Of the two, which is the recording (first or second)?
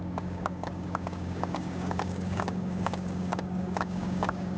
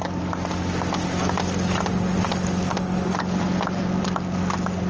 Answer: second